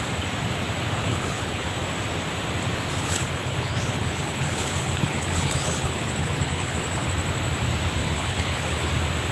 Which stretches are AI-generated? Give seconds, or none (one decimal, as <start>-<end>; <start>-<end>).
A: 1.0-1.7; 3.0-7.1; 8.0-8.9